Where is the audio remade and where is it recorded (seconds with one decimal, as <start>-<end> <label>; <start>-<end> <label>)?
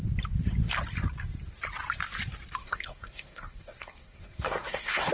0.0-2.6 recorded; 2.6-5.1 remade